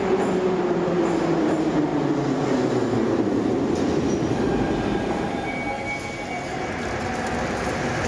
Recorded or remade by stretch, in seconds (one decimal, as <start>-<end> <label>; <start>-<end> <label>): 0.0-8.1 recorded